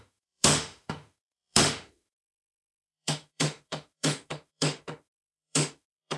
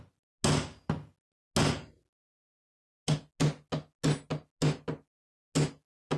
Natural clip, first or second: second